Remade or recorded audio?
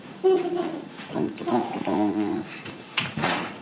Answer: remade